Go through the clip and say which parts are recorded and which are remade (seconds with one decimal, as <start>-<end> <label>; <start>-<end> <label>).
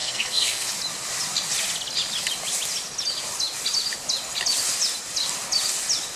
0.0-0.7 remade; 0.7-6.2 recorded